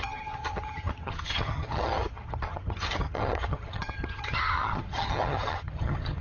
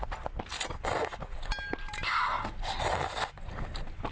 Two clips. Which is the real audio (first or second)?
second